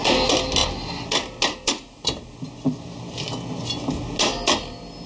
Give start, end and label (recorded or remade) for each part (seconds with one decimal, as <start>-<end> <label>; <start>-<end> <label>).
0.0-5.1 recorded